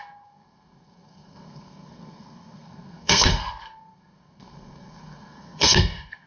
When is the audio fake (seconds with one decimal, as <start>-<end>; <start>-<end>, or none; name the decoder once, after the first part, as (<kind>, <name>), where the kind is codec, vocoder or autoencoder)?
0.0-6.3 (codec, SNAC)